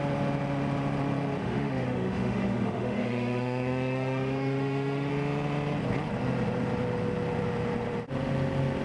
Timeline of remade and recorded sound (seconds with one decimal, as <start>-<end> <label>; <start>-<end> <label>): 0.0-1.4 recorded; 1.4-5.1 remade; 5.1-8.8 recorded